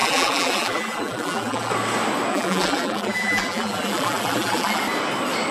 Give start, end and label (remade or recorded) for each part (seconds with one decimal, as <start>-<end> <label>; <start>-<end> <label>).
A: 0.0-1.7 remade; 1.7-2.3 recorded; 2.3-4.8 remade; 4.8-5.5 recorded